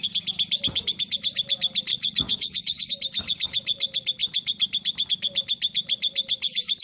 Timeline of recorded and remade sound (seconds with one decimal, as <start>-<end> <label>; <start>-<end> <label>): 0.0-1.9 recorded; 1.9-2.9 remade; 2.9-6.8 recorded